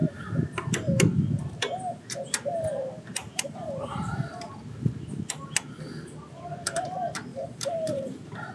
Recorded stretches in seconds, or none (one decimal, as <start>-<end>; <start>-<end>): 0.0-3.2; 4.3-7.3